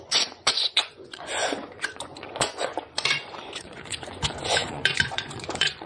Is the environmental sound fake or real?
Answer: fake